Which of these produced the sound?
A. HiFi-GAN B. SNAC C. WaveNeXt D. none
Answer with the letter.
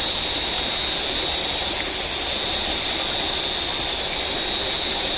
D